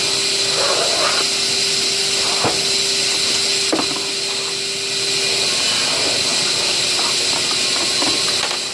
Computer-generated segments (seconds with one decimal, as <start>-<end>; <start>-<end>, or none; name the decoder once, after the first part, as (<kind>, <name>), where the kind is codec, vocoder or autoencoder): none